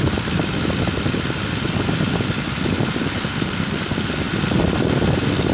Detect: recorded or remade recorded